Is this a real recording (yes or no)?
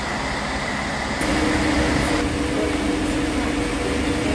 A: yes